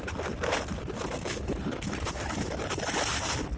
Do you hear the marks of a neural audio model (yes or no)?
yes